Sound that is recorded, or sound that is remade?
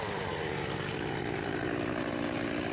recorded